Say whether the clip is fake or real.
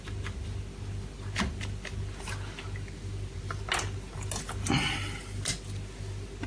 real